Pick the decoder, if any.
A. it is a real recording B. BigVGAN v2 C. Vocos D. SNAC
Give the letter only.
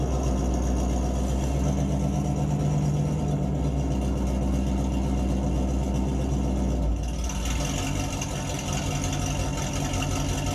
A